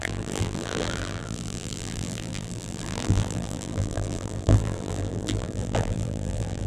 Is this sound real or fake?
fake